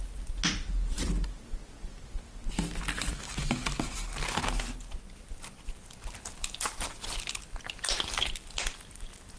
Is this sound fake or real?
real